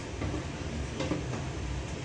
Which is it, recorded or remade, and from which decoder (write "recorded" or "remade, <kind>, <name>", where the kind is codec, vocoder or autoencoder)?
recorded